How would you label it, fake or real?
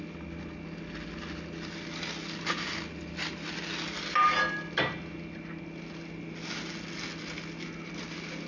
real